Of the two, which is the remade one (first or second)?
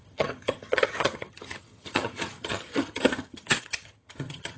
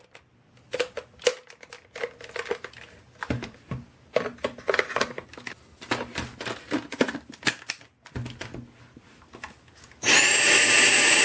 first